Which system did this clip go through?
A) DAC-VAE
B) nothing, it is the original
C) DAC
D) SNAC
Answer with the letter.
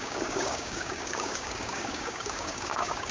C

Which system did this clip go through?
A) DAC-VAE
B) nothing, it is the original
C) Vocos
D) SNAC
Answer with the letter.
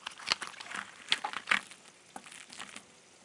B